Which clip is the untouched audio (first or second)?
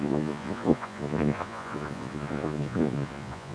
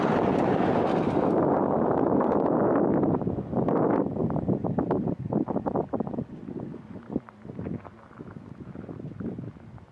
second